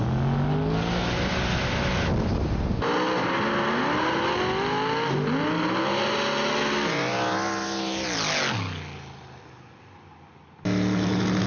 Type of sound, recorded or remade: recorded